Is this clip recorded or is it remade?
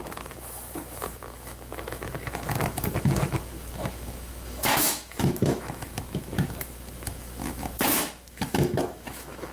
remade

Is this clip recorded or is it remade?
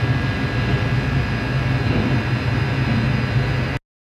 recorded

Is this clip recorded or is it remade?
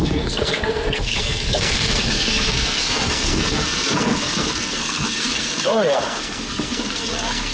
remade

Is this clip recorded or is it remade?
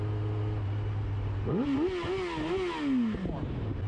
recorded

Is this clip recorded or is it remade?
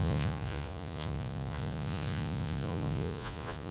remade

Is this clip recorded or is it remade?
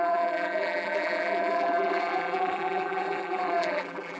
remade